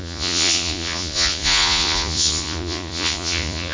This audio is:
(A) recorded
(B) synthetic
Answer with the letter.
B